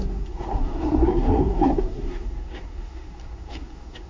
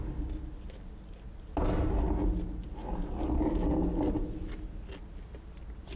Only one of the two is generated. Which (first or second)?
first